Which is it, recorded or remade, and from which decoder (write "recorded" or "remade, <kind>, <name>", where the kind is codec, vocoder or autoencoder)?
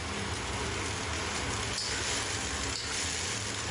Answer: recorded